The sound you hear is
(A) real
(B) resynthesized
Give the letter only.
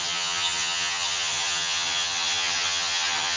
B